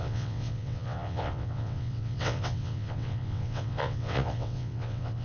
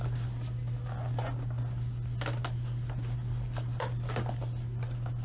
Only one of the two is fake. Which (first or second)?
first